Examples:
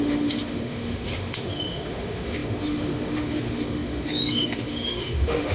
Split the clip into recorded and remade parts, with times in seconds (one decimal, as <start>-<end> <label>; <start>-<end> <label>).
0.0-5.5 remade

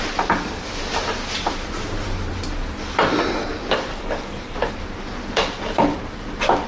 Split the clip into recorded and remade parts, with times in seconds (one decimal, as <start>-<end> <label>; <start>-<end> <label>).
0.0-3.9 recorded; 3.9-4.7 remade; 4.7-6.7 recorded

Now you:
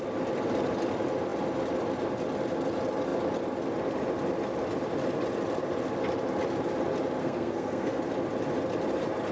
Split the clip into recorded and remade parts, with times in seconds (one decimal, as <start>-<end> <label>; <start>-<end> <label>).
0.0-7.2 recorded; 7.2-8.0 remade; 8.0-9.3 recorded

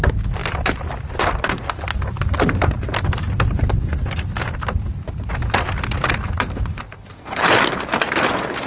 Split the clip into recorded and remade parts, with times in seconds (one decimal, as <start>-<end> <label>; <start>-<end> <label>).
0.0-7.2 recorded; 7.2-7.8 remade; 7.8-8.7 recorded

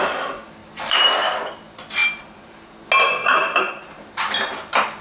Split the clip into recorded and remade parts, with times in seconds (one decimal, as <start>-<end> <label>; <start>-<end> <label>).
0.0-0.6 recorded; 0.6-1.1 remade; 1.1-2.0 recorded; 2.0-2.7 remade; 2.7-3.4 recorded; 3.4-4.3 remade; 4.3-5.0 recorded

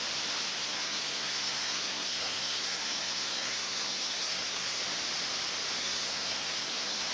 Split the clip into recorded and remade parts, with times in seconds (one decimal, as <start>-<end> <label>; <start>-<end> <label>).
0.0-0.5 recorded; 0.5-4.8 remade; 4.8-5.8 recorded; 5.8-7.1 remade

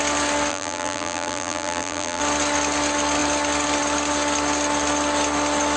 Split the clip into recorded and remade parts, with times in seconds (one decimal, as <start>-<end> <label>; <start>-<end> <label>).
0.0-0.5 recorded; 0.5-2.2 remade; 2.2-5.8 recorded